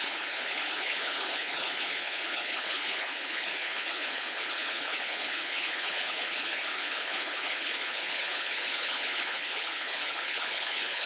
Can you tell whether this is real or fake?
fake